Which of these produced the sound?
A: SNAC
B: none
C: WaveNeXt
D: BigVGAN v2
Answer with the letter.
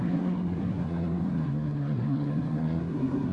A